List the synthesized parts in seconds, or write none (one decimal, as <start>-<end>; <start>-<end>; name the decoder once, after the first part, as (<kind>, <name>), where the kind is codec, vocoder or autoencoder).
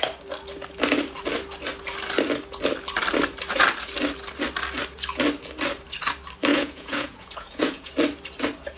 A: 6.5-7.9 (vocoder, Vocos)